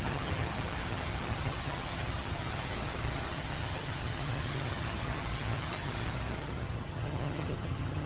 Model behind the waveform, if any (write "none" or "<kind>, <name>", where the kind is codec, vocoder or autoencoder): vocoder, HiFi-GAN